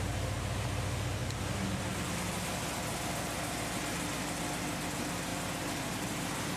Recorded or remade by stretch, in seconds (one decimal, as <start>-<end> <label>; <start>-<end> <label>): 0.0-6.6 recorded